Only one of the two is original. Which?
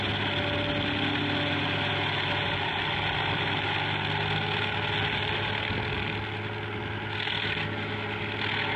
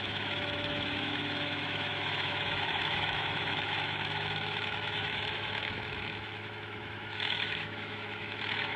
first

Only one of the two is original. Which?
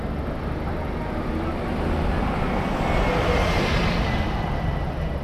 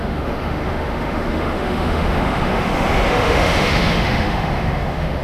first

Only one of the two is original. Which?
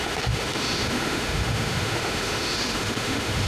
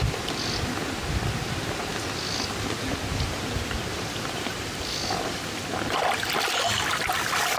second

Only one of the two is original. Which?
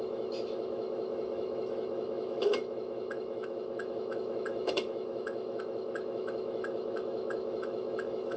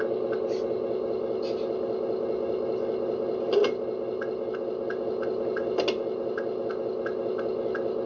second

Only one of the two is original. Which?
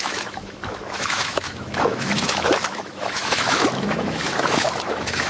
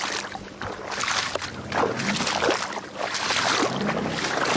second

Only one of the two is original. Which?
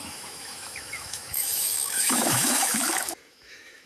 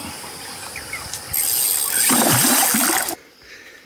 second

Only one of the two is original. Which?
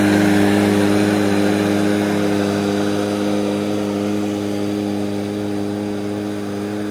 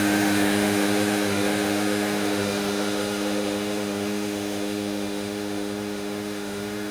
first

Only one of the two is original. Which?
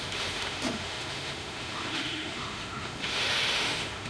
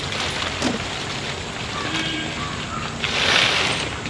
second